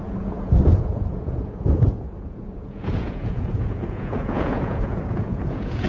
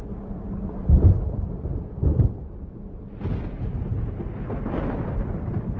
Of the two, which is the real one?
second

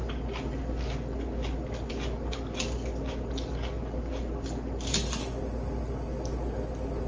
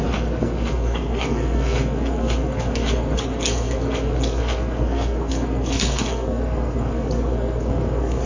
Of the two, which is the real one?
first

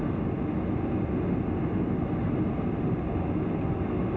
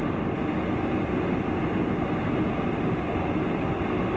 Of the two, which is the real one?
first